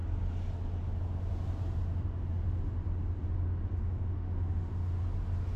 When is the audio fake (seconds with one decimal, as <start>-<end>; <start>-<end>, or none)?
3.8-4.7